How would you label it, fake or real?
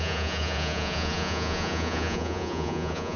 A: fake